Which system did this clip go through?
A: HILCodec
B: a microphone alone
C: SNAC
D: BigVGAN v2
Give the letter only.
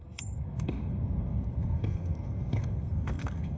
C